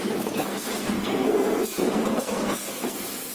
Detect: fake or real fake